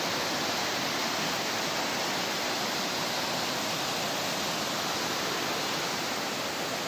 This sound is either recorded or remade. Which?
recorded